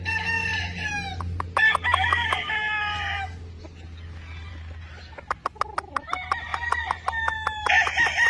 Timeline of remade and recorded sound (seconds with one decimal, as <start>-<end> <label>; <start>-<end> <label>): 0.0-8.3 recorded